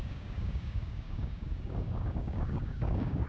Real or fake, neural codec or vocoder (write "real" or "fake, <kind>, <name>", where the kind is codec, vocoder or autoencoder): fake, codec, DAC